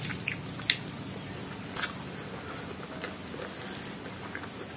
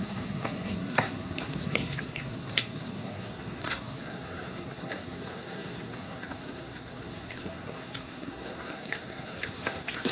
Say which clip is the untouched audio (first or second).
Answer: first